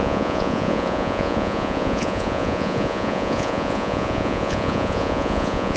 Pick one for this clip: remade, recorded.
remade